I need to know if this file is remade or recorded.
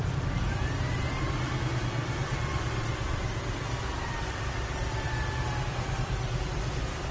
remade